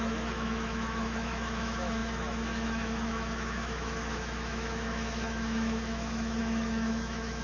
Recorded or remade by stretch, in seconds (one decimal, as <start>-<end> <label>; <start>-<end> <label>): 0.0-7.4 remade